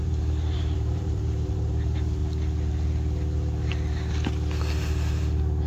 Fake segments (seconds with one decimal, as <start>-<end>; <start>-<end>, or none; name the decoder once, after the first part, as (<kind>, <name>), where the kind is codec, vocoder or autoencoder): 0.0-2.2 (vocoder, BigVGAN v2)